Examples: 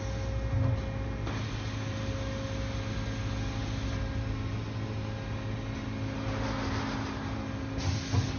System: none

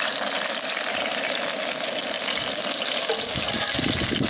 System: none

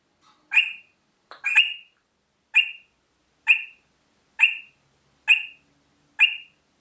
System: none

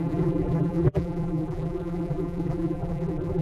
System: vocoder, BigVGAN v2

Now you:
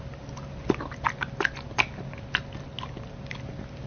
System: none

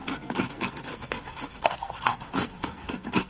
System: codec, SNAC